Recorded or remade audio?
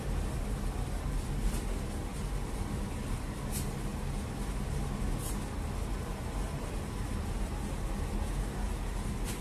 recorded